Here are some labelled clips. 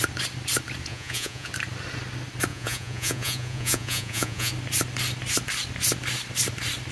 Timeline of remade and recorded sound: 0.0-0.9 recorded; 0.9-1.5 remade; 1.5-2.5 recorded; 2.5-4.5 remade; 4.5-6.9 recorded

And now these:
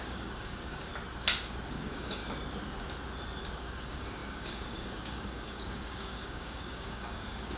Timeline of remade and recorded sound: 0.0-0.9 remade; 0.9-1.7 recorded; 1.7-2.2 remade; 2.2-3.6 recorded; 3.6-7.6 remade

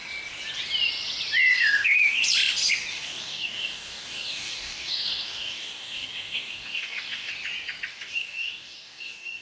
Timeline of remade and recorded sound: 0.0-1.5 recorded; 1.5-2.2 remade; 2.2-2.9 recorded; 2.9-7.3 remade; 7.3-7.9 recorded; 7.9-9.4 remade

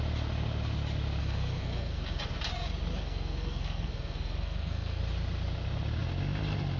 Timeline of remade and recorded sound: 0.0-1.2 recorded; 1.2-2.2 remade; 2.2-2.9 recorded; 2.9-5.0 remade; 5.0-6.8 recorded

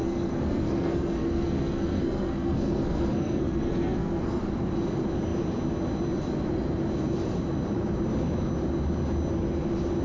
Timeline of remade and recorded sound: 0.0-4.4 remade; 4.4-10.0 recorded

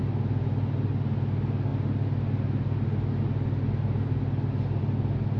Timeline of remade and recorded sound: 0.0-5.4 recorded

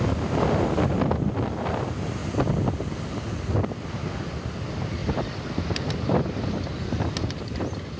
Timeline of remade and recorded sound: 0.0-5.0 recorded; 5.0-8.0 remade